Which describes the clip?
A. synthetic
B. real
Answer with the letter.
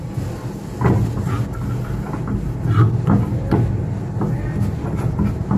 B